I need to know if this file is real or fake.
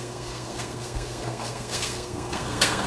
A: fake